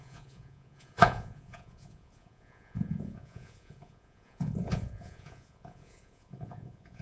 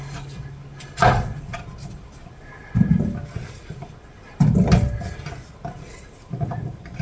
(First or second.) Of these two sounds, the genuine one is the second